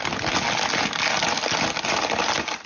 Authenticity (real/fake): real